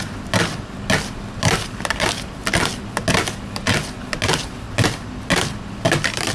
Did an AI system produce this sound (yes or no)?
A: no